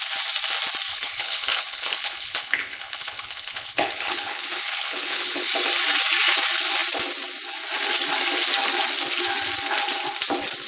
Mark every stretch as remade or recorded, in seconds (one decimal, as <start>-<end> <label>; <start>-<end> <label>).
0.0-0.9 recorded; 0.9-5.5 remade; 5.5-10.7 recorded